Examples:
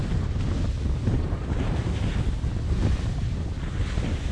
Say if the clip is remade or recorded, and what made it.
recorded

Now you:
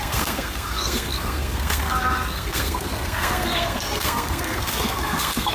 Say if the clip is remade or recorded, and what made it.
remade, codec, SNAC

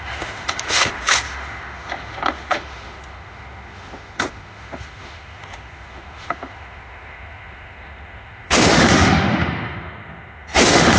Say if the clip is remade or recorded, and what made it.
remade, autoencoder, DAC-VAE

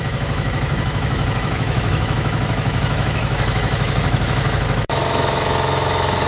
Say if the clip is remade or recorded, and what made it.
remade, autoencoder, DAC-VAE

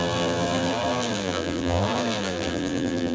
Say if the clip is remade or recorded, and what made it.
remade, vocoder, BigVGAN v2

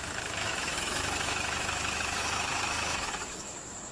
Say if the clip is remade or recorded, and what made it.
remade, autoencoder, DAC-VAE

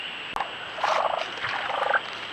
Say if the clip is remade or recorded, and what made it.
recorded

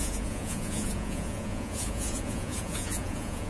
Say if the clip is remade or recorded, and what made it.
remade, vocoder, Vocos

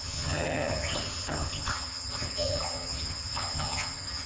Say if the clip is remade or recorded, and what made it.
remade, vocoder, HiFi-GAN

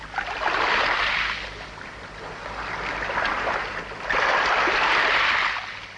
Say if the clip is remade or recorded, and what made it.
recorded